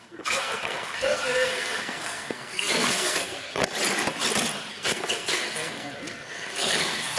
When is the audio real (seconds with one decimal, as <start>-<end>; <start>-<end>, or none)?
3.6-4.7